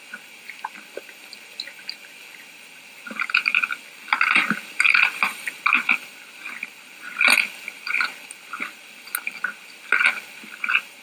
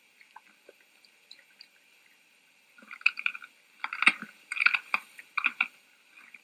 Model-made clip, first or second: second